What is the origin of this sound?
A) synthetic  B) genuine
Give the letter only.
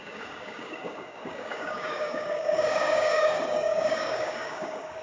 A